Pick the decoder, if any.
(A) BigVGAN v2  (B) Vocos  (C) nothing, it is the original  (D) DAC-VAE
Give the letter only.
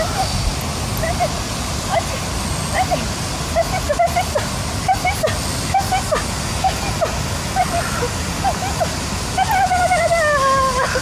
C